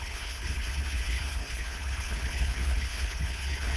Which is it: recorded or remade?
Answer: remade